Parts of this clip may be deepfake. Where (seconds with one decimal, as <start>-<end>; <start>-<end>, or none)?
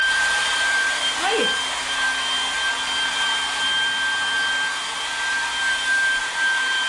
0.0-1.3; 3.1-3.7; 6.2-6.9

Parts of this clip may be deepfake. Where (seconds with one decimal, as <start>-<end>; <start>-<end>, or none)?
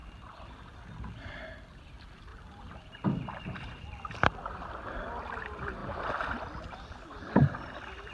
0.0-5.8; 6.6-8.1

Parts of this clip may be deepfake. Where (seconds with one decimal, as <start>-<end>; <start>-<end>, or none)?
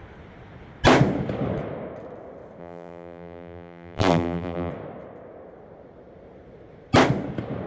2.6-4.7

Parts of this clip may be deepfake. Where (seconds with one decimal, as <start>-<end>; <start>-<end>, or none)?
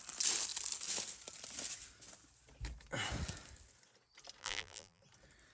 4.4-5.0